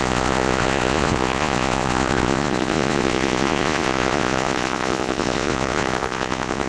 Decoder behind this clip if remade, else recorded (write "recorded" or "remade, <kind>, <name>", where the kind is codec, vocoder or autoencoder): remade, vocoder, Vocos